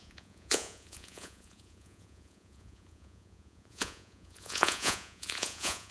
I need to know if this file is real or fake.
fake